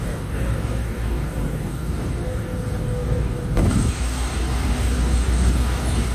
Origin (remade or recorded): remade